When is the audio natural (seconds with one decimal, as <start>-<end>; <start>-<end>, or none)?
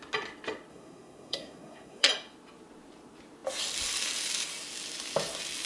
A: 0.0-0.7; 2.1-5.7